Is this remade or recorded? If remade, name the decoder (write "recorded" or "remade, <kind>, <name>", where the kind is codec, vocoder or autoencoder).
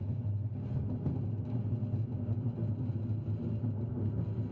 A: recorded